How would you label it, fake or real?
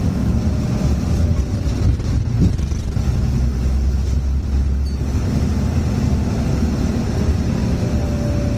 real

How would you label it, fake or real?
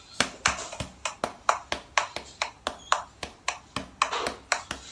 real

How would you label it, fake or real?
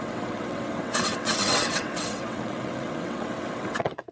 fake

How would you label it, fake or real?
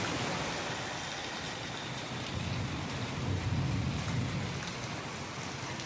real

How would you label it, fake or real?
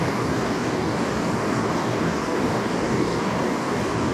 fake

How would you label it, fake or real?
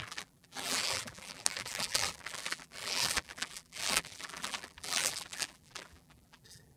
fake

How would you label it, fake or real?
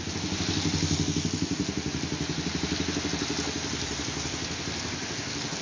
real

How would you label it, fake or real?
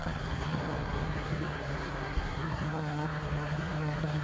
fake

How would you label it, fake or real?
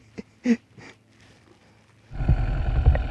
real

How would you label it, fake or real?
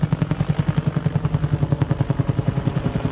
real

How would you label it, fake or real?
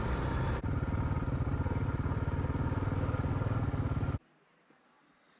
real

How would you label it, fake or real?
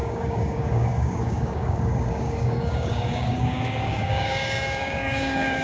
fake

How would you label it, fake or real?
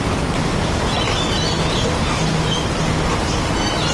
real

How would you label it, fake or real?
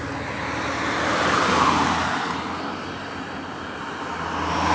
real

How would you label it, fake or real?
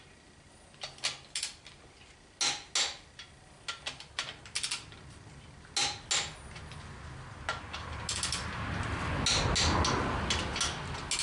real